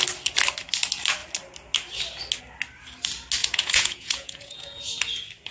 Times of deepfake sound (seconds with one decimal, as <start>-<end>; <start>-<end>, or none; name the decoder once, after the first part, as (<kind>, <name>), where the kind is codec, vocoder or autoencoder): 3.4-4.8 (vocoder, Vocos)